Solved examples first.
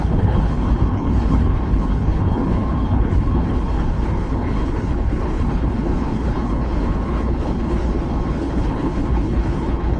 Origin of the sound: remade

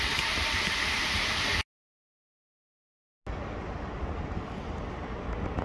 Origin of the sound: recorded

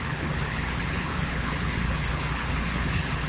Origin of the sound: remade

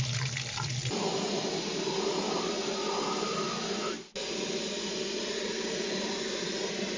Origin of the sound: recorded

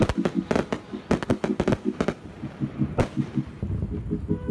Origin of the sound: recorded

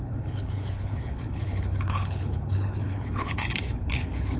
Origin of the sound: remade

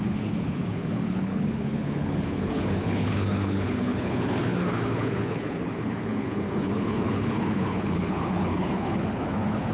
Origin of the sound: remade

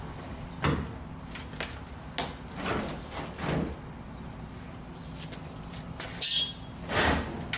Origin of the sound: recorded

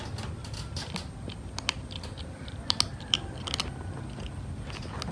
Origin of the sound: recorded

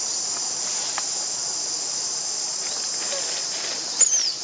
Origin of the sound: recorded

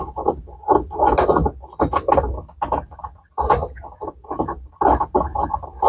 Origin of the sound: recorded